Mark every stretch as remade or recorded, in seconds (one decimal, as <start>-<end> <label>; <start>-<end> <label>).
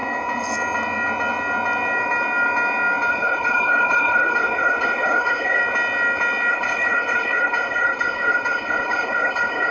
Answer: 0.0-3.1 recorded; 3.1-5.6 remade; 5.6-6.5 recorded; 6.5-9.7 remade